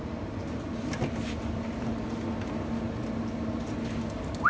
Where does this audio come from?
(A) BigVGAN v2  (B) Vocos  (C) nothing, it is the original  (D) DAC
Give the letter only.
C